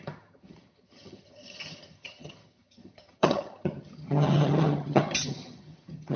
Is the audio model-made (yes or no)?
yes